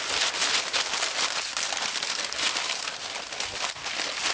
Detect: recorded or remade recorded